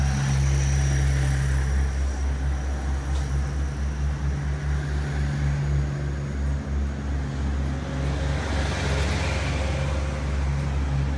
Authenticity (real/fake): real